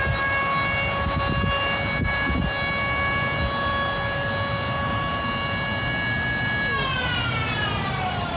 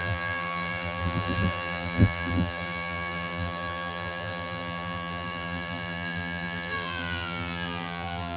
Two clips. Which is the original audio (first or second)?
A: first